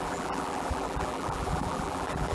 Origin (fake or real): fake